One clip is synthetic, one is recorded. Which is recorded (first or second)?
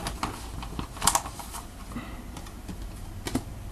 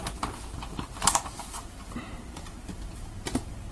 first